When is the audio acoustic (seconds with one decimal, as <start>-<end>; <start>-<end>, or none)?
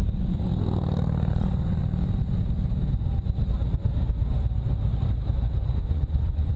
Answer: 0.5-1.3; 1.8-5.8